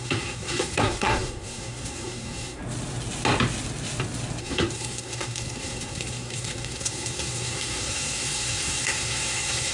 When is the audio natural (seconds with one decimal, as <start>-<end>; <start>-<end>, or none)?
2.6-4.4